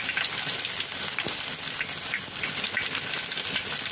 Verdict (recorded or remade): recorded